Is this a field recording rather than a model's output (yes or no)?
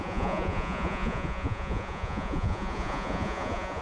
no